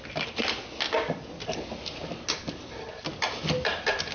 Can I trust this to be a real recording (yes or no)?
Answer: yes